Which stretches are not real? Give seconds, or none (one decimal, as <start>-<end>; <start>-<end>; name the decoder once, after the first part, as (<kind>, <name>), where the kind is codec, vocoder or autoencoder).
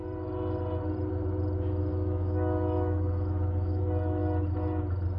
1.9-3.8 (autoencoder, DAC-VAE)